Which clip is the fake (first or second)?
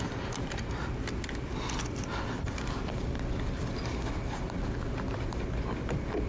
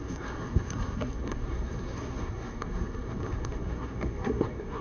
second